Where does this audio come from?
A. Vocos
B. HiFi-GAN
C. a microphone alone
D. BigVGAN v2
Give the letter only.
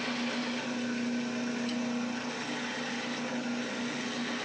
C